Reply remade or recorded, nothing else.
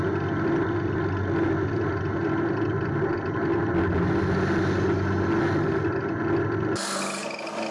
recorded